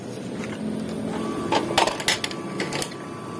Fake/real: real